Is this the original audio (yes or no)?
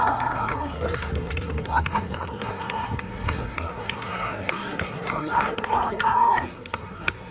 no